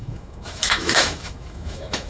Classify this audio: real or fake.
fake